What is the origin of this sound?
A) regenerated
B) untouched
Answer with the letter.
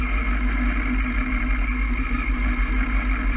B